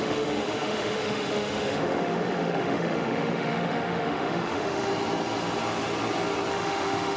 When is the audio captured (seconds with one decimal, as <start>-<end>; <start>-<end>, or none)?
4.9-6.5